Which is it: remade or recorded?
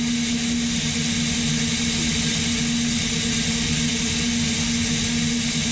recorded